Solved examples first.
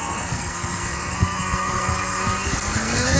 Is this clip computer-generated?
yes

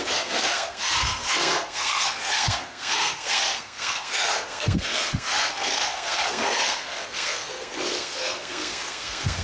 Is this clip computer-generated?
yes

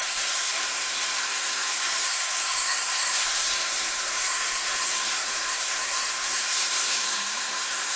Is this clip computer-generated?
yes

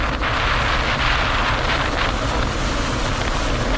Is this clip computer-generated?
no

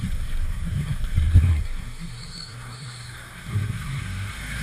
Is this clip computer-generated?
yes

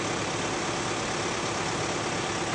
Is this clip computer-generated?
no